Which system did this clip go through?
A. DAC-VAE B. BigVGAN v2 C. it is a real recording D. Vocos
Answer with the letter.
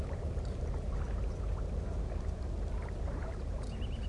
B